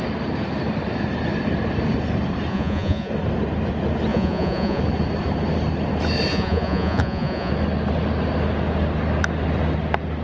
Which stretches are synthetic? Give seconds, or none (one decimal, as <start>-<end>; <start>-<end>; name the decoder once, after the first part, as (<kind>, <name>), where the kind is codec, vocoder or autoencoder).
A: 2.5-3.1 (vocoder, Vocos); 4.1-4.8; 6.3-7.5